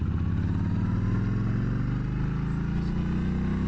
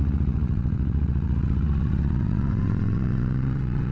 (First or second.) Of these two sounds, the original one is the first